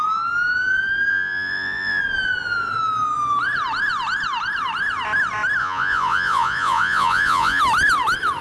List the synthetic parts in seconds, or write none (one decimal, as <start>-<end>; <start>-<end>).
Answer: 1.1-2.0; 5.6-7.6